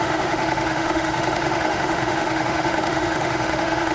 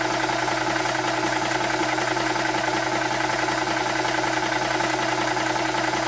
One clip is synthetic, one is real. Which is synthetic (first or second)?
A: first